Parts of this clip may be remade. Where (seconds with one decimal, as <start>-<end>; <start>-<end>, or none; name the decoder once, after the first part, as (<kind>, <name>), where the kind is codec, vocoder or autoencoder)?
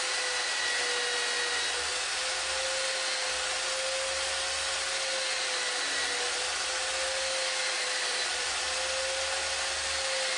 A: 7.7-8.5 (vocoder, BigVGAN v2)